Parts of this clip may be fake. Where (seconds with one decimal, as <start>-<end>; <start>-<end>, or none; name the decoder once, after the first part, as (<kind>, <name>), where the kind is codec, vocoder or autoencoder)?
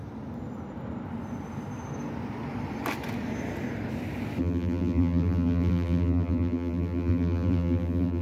4.4-8.2 (vocoder, BigVGAN v2)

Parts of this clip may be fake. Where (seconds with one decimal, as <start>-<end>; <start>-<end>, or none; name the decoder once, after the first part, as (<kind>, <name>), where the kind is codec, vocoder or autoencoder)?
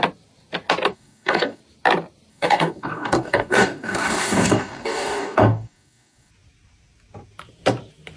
0.9-1.6 (codec, DAC); 2.3-6.3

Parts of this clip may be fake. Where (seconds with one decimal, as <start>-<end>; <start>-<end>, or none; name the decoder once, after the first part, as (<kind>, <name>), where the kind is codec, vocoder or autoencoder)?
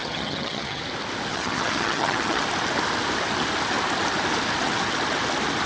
0.0-0.8 (vocoder, HiFi-GAN); 1.3-2.4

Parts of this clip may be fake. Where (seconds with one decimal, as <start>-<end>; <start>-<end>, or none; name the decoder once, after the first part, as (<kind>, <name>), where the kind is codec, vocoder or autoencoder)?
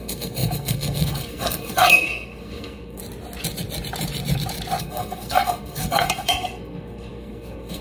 0.0-3.0 (codec, SNAC); 4.8-7.8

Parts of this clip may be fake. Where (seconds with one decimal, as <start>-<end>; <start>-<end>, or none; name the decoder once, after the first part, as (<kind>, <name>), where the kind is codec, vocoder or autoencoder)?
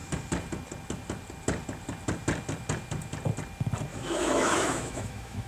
3.9-5.5 (autoencoder, DAC-VAE)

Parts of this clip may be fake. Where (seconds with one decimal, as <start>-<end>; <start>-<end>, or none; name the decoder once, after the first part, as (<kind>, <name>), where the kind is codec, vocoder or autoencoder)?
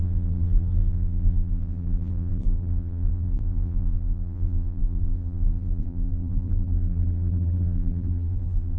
0.0-8.8 (vocoder, BigVGAN v2)